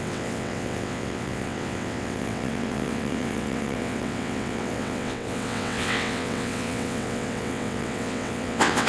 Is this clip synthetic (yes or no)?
yes